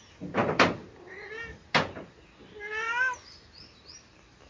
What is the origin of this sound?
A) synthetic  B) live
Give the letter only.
B